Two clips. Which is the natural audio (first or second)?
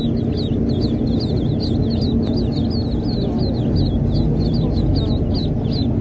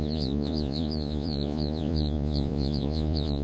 first